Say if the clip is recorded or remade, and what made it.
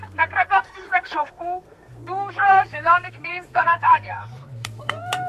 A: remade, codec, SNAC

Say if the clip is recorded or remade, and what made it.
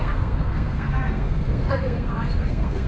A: remade, codec, SNAC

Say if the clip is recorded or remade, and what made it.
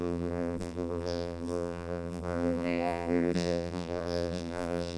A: remade, vocoder, BigVGAN v2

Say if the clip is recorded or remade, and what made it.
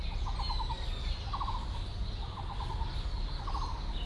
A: recorded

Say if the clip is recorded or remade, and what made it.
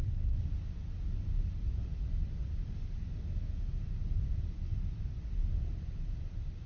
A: recorded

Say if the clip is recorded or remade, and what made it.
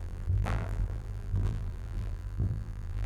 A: remade, vocoder, BigVGAN v2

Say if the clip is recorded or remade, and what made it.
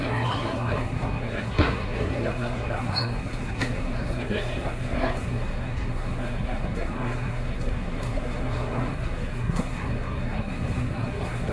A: remade, codec, SNAC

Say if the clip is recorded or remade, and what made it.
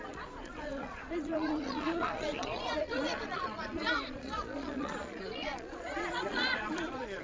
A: remade, vocoder, Vocos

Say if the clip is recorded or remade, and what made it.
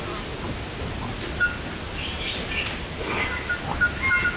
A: recorded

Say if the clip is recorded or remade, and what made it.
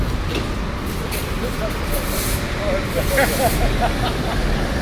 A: recorded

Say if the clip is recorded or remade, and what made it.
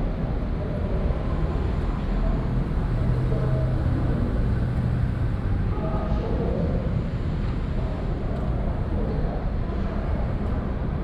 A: recorded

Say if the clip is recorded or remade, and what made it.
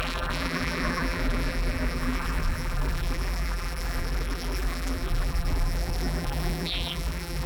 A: remade, vocoder, BigVGAN v2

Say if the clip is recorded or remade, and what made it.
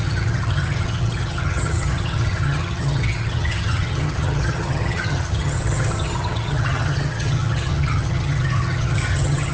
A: remade, vocoder, HiFi-GAN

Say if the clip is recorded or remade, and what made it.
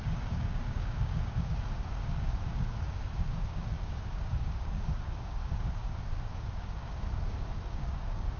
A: remade, codec, DAC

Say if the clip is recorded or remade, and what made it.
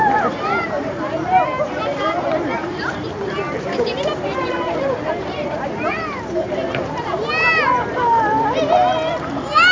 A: remade, vocoder, BigVGAN v2